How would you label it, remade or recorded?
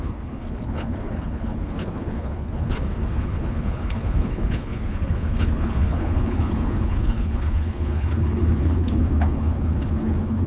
remade